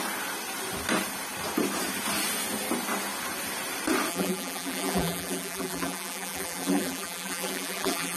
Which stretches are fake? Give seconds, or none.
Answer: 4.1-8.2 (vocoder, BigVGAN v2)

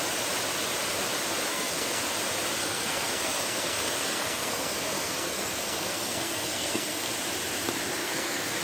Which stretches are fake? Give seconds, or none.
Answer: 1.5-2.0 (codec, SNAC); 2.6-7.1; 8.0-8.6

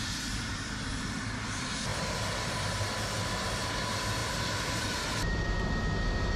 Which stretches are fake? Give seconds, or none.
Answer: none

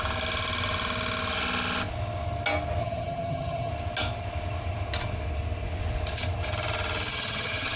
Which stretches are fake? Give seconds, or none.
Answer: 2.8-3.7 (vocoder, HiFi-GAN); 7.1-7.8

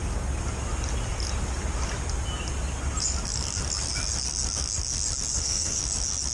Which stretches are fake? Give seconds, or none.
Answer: 5.3-5.8 (codec, SNAC)

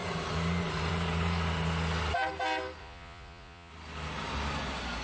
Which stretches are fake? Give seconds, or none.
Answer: 2.8-3.7 (vocoder, Vocos)

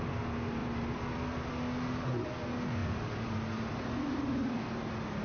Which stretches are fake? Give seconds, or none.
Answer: 0.6-1.5 (vocoder, BigVGAN v2); 2.8-5.2

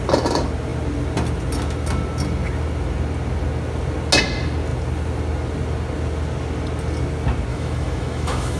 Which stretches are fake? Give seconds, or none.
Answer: 7.5-8.6 (autoencoder, DAC-VAE)